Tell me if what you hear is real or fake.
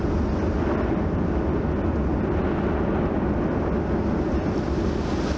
real